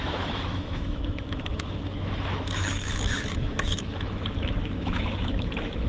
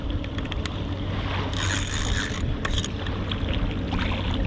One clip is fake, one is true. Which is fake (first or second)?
first